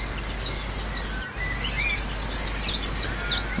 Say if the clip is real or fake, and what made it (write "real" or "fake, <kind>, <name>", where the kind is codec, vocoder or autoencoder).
real